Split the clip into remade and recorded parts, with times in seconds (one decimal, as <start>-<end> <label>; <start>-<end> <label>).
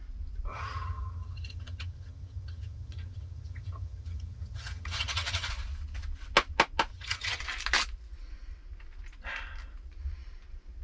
0.0-0.5 recorded; 0.5-5.5 remade; 5.5-6.9 recorded; 6.9-7.4 remade; 7.4-10.8 recorded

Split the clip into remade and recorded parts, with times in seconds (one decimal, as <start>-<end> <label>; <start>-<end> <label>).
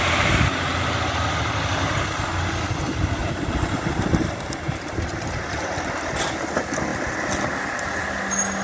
0.0-3.2 recorded; 3.2-6.3 remade; 6.3-8.6 recorded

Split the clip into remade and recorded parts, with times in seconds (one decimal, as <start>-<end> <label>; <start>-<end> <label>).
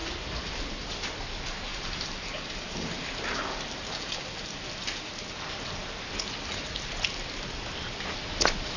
0.0-0.6 remade; 0.6-1.7 recorded; 1.7-4.5 remade; 4.5-8.8 recorded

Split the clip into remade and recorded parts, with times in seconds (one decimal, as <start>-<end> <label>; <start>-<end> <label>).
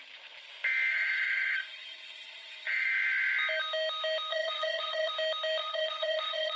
0.0-0.9 recorded; 0.9-2.9 remade; 2.9-4.3 recorded; 4.3-5.1 remade; 5.1-5.6 recorded; 5.6-6.6 remade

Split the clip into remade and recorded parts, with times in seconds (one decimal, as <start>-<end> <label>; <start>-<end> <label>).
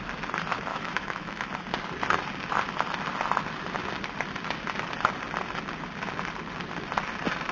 0.0-0.7 recorded; 0.7-1.5 remade; 1.5-7.5 recorded